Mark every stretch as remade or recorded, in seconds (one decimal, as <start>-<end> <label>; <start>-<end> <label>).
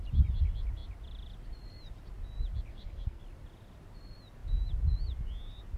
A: 0.0-2.7 recorded; 2.7-3.2 remade; 3.2-5.8 recorded